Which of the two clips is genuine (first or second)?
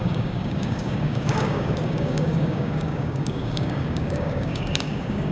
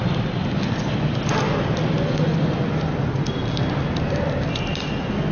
second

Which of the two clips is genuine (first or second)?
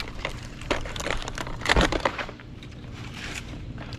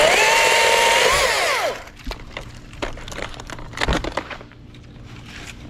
second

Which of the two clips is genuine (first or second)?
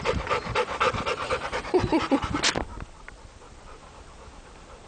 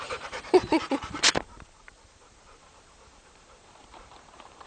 first